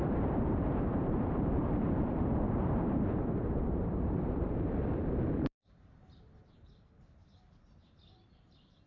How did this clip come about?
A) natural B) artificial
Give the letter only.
B